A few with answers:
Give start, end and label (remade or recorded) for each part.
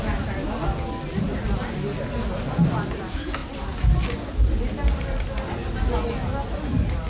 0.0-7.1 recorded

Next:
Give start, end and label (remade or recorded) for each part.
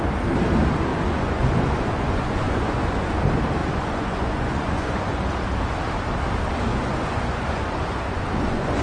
0.0-0.9 recorded; 0.9-3.1 remade; 3.1-3.6 recorded; 3.6-5.2 remade; 5.2-6.7 recorded; 6.7-8.8 remade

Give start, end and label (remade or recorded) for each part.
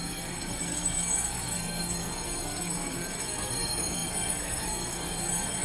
0.0-5.6 remade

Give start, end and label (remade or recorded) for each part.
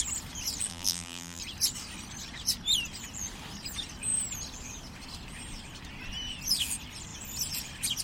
0.0-0.7 recorded; 0.7-1.4 remade; 1.4-8.0 recorded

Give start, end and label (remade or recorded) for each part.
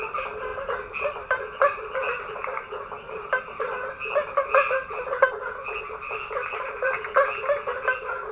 0.0-8.3 recorded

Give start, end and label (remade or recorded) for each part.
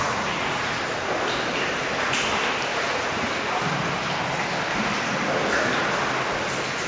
0.0-0.8 remade; 0.8-2.7 recorded; 2.7-3.3 remade; 3.3-6.9 recorded